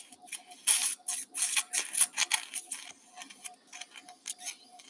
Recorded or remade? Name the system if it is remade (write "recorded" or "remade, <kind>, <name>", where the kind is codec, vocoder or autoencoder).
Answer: recorded